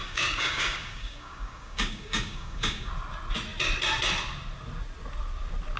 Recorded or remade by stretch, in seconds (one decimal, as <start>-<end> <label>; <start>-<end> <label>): 0.0-2.9 remade; 2.9-5.8 recorded